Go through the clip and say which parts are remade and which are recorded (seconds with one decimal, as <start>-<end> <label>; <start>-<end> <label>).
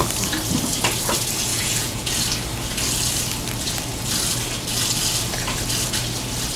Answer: 0.0-1.5 recorded; 1.5-2.1 remade; 2.1-6.6 recorded